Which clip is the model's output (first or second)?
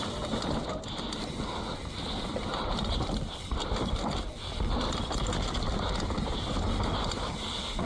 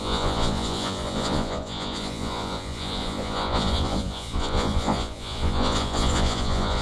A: second